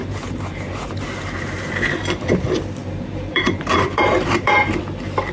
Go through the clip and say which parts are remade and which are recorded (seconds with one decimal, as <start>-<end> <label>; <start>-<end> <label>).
0.0-1.6 remade; 1.6-2.8 recorded; 2.8-4.8 remade; 4.8-5.3 recorded